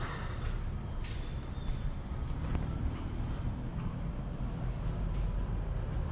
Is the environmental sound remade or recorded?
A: recorded